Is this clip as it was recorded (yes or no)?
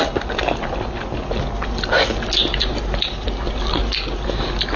yes